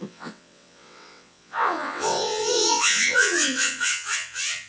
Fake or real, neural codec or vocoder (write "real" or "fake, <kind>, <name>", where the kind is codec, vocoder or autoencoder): fake, vocoder, WaveNeXt